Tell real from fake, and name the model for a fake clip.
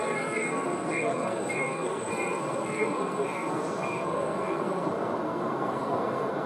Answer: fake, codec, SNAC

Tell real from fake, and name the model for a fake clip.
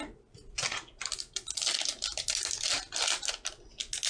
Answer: real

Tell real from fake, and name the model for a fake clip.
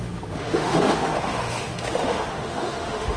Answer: fake, autoencoder, DAC-VAE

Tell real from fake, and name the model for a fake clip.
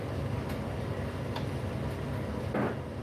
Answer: real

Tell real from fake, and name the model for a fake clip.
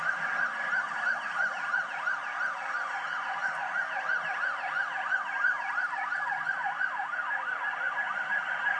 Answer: real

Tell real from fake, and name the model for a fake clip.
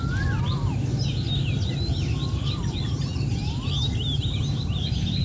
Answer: real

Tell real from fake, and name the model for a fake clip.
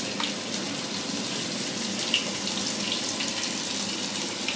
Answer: real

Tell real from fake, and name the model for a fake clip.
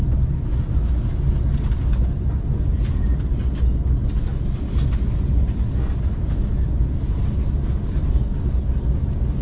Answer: real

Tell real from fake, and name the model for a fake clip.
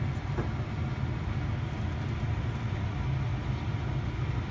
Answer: real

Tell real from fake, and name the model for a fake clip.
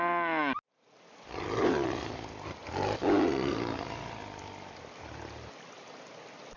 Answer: real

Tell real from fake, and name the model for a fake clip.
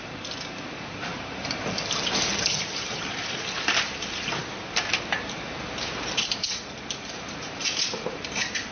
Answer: fake, vocoder, BigVGAN v2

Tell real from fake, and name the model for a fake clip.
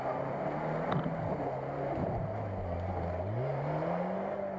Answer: real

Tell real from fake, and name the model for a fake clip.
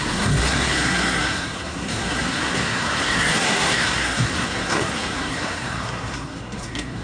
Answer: fake, codec, SNAC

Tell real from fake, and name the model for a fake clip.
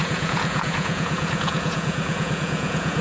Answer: fake, vocoder, Vocos